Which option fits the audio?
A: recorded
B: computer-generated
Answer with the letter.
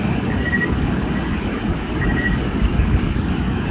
B